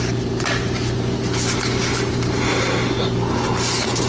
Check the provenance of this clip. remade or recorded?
recorded